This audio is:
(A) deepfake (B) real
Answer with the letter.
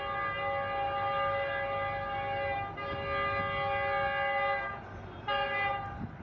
B